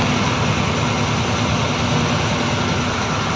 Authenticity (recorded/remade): recorded